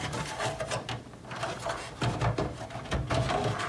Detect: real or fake real